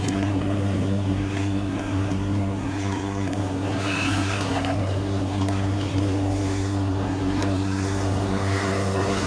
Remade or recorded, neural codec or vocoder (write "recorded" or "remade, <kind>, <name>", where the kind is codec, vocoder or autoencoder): remade, codec, SNAC